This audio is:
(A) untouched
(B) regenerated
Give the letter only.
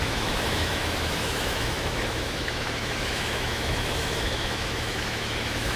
B